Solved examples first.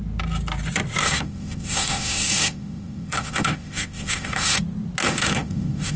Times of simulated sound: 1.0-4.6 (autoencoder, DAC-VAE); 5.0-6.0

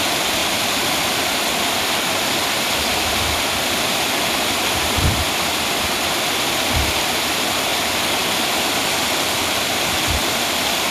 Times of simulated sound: none

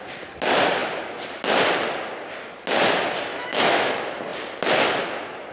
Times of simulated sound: 3.3-3.9 (autoencoder, DAC-VAE)